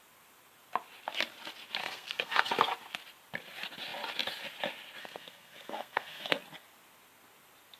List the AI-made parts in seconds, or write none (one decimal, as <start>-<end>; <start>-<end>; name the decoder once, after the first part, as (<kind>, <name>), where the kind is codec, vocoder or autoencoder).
1.8-2.5 (codec, SNAC); 5.0-6.4